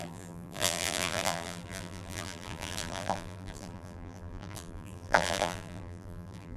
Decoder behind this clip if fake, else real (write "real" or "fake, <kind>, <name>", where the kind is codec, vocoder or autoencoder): fake, vocoder, BigVGAN v2